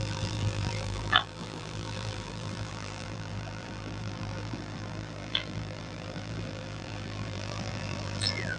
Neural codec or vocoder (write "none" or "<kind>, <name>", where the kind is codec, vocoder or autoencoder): vocoder, BigVGAN v2